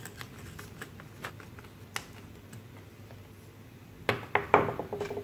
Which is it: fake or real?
real